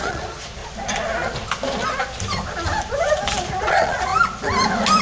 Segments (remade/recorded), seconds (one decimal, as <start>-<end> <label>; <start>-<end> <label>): 0.0-0.6 remade; 0.6-3.6 recorded; 3.6-4.1 remade; 4.1-5.0 recorded